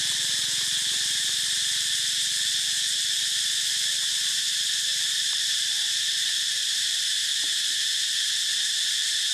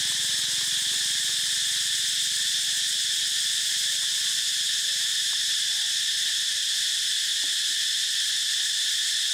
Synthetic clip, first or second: first